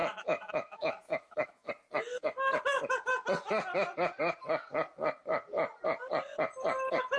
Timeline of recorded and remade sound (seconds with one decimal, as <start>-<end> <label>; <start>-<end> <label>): 0.0-1.7 remade; 1.7-7.2 recorded